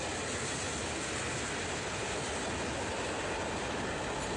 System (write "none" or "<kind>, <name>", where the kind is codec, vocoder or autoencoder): none